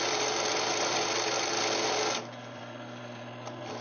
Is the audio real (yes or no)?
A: yes